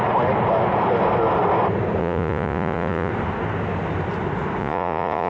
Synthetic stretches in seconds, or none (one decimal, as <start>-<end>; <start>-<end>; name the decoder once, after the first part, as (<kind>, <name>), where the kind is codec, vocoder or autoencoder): 2.0-3.1 (vocoder, Vocos); 4.6-5.3